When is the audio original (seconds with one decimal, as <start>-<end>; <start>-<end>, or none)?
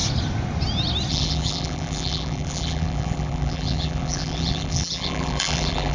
0.0-1.1